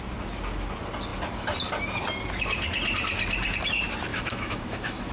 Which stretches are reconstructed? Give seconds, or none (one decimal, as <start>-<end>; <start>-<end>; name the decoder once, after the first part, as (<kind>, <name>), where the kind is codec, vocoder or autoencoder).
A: 4.1-5.1 (autoencoder, DAC-VAE)